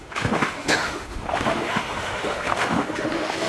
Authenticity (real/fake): fake